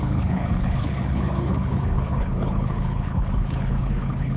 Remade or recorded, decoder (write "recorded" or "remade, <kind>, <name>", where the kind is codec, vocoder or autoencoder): remade, codec, HILCodec